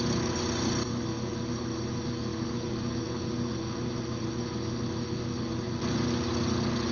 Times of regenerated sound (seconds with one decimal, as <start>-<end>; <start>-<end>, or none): none